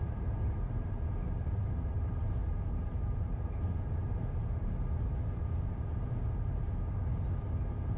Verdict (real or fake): fake